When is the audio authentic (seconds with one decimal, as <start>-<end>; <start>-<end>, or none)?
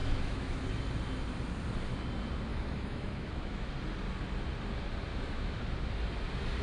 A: 0.6-2.5; 3.7-5.1; 5.6-6.6